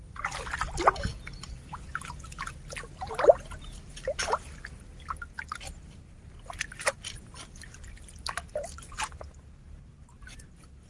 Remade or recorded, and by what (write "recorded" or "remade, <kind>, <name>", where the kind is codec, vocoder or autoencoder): recorded